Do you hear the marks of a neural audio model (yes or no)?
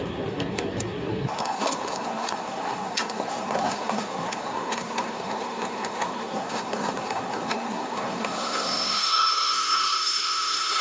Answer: yes